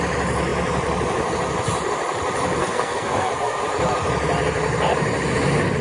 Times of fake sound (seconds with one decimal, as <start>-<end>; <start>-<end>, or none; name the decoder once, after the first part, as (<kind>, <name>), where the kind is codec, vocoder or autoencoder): 2.6-3.6 (codec, SNAC)